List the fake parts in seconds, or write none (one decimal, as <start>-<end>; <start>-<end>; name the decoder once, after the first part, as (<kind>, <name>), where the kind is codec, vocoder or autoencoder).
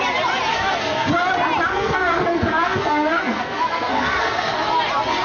0.5-1.1 (codec, SNAC); 1.7-4.8